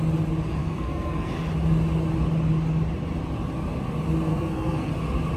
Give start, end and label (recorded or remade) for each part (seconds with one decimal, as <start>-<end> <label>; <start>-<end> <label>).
0.0-0.6 recorded; 0.6-1.3 remade; 1.3-4.3 recorded; 4.3-4.9 remade; 4.9-5.4 recorded